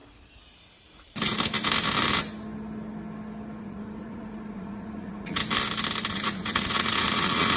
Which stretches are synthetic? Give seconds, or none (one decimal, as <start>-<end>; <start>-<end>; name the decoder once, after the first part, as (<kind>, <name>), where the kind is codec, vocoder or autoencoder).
3.6-5.4 (vocoder, Vocos); 6.1-7.6